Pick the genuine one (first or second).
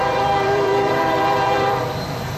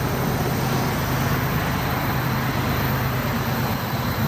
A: second